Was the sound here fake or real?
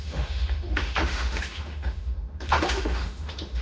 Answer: fake